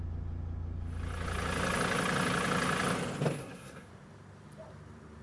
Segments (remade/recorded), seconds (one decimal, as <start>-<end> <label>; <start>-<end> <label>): 0.0-3.4 recorded; 3.4-3.9 remade; 3.9-5.2 recorded